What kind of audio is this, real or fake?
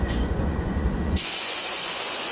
fake